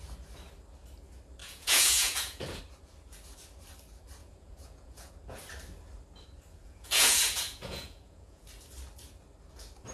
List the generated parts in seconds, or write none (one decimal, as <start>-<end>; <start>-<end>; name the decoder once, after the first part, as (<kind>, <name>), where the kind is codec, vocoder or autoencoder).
1.4-2.6 (vocoder, Vocos); 4.2-5.1; 6.6-8.4